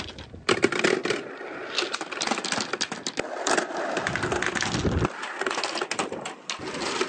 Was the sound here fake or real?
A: real